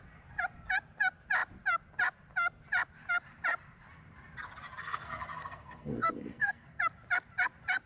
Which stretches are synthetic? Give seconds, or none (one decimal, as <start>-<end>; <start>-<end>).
4.8-6.8